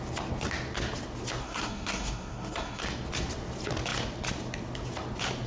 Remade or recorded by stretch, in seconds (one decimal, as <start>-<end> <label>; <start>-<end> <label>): 0.0-1.4 recorded; 1.4-2.8 remade; 2.8-5.5 recorded